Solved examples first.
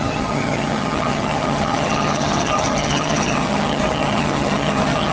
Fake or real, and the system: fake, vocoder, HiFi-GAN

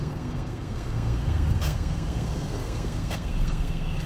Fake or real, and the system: fake, codec, SNAC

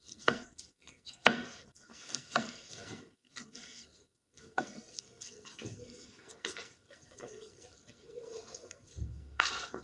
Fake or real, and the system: fake, codec, SNAC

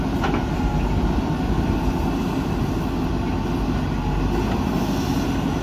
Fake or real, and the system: real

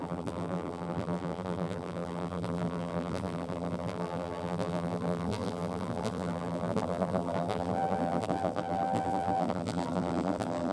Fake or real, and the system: fake, vocoder, BigVGAN v2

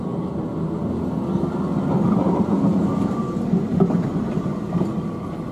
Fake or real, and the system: real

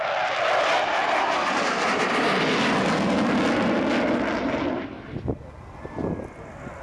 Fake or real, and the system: real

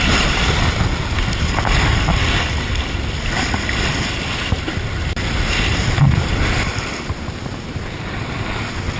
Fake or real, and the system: real